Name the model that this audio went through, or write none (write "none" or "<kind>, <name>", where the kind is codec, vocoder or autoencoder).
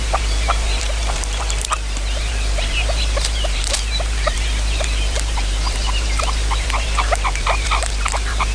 vocoder, BigVGAN v2